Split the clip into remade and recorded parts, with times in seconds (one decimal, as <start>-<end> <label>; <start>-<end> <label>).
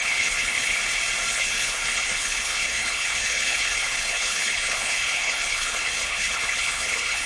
0.0-0.8 remade; 0.8-1.3 recorded; 1.3-7.3 remade